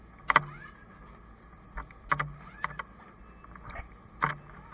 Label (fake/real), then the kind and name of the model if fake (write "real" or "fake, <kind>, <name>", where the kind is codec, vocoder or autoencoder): real